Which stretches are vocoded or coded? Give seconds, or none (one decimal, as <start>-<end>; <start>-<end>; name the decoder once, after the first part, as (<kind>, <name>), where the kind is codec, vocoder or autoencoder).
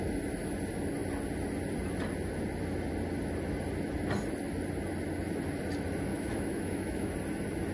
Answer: 6.1-7.1 (autoencoder, DAC-VAE)